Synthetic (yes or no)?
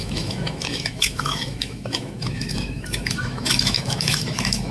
yes